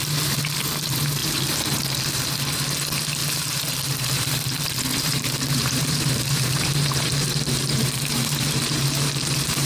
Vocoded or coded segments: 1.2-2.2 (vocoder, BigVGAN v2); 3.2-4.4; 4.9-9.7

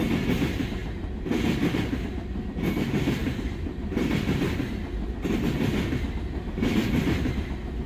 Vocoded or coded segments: none

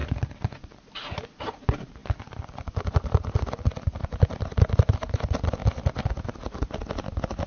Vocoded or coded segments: 0.0-0.8 (vocoder, BigVGAN v2); 2.0-4.7

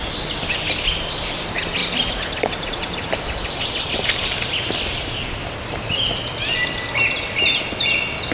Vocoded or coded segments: 1.8-6.4 (vocoder, BigVGAN v2)

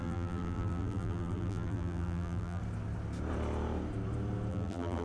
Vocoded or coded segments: 0.0-2.6 (vocoder, BigVGAN v2); 4.5-5.0

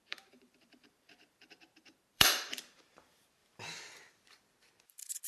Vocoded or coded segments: 0.0-3.4 (vocoder, BigVGAN v2)